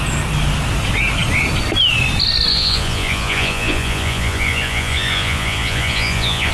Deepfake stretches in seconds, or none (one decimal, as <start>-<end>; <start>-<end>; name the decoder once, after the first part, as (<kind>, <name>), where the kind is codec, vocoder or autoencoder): 2.5-6.5 (vocoder, Vocos)